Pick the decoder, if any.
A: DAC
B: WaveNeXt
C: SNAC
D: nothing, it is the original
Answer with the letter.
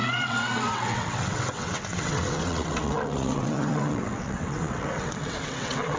B